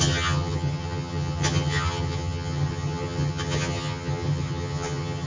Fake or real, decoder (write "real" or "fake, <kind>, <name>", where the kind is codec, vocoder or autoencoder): fake, vocoder, HiFi-GAN